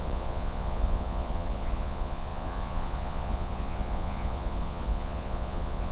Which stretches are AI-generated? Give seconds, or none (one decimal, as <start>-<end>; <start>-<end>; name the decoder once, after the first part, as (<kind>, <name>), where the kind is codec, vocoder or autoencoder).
0.0-5.9 (vocoder, Vocos)